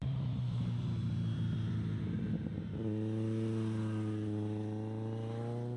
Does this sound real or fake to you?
fake